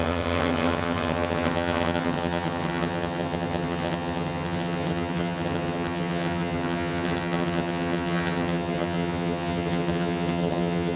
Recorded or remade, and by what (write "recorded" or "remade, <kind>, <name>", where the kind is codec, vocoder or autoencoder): remade, vocoder, HiFi-GAN